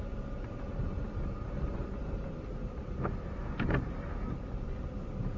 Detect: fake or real real